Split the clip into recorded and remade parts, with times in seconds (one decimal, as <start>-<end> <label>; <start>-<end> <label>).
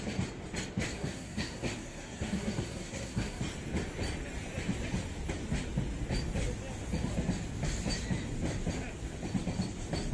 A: 0.0-0.9 recorded; 0.9-3.4 remade; 3.4-10.1 recorded